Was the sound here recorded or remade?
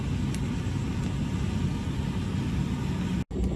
recorded